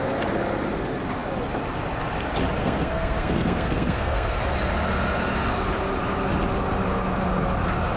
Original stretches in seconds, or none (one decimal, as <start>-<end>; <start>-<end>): 0.0-2.6; 4.4-8.0